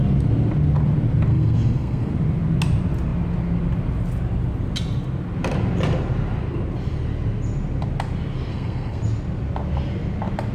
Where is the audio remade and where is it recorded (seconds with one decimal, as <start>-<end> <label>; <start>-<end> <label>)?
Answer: 0.0-1.3 recorded; 1.3-2.1 remade; 2.1-8.5 recorded; 8.5-9.0 remade; 9.0-10.5 recorded